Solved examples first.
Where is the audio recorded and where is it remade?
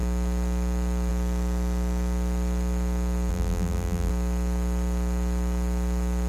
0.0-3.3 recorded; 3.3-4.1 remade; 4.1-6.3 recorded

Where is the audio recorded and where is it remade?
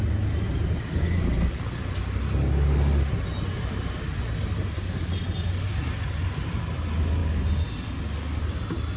0.0-9.0 recorded